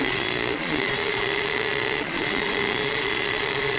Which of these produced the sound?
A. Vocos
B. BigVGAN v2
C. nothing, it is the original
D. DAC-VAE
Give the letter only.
A